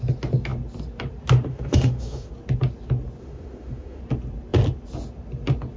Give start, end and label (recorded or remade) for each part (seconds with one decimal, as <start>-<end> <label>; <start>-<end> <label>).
0.0-1.5 recorded; 1.5-2.3 remade; 2.3-3.2 recorded; 3.2-4.0 remade; 4.0-5.8 recorded